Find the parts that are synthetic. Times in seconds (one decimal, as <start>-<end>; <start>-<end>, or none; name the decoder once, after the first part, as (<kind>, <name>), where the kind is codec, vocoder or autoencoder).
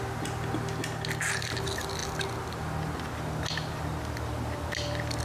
none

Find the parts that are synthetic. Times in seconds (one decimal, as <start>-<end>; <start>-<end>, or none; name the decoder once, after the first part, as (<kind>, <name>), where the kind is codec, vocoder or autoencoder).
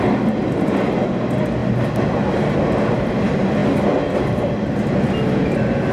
3.6-4.7 (vocoder, BigVGAN v2)